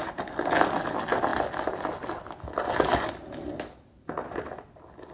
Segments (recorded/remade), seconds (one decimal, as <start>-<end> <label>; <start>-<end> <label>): 0.0-5.1 recorded